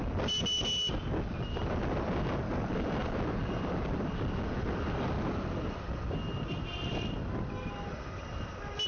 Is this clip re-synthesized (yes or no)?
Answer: no